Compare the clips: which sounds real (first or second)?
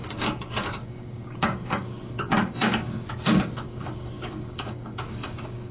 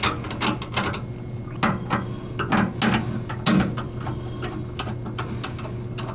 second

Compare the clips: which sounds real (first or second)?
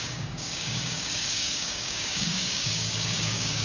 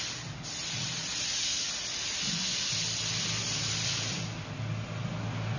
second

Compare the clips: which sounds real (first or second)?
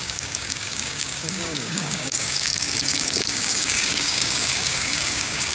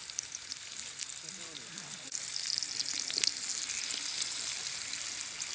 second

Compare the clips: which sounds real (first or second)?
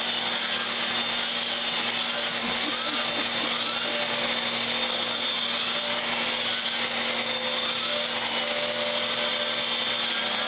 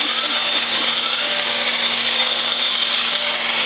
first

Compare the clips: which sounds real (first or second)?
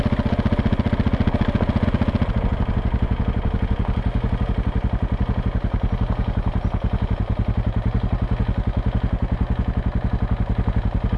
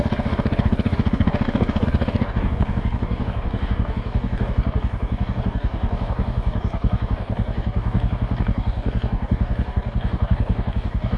first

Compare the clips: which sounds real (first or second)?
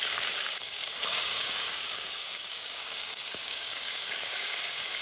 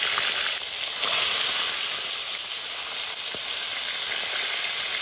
second